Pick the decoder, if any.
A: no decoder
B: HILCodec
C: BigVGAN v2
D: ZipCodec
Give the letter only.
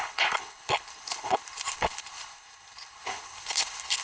B